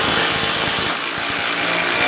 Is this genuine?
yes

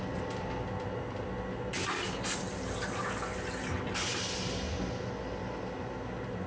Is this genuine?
yes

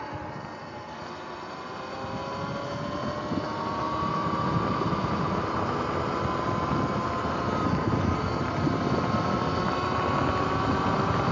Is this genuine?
yes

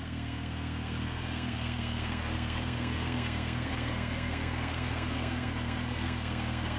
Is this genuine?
no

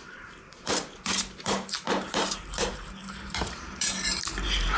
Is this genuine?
no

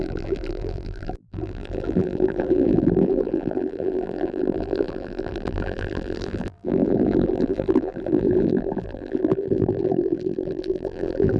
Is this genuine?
no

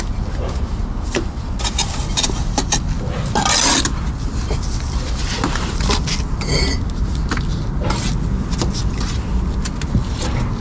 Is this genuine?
yes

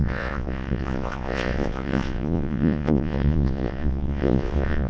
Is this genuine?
no